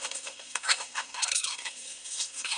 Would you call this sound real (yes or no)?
no